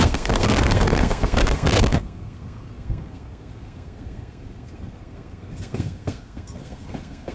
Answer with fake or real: fake